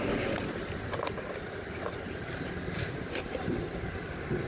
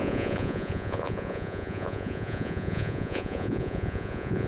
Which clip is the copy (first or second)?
second